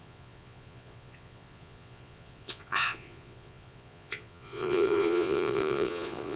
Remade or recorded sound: remade